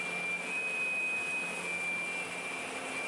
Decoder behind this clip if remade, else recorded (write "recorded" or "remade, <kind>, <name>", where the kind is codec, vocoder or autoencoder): recorded